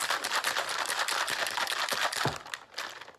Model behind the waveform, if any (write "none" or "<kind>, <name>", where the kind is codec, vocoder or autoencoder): vocoder, BigVGAN v2